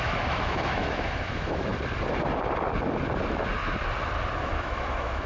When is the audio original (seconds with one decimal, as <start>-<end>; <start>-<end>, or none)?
1.7-4.4